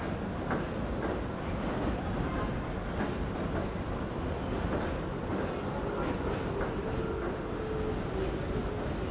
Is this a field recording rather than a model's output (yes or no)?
yes